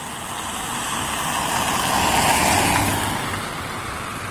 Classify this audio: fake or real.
real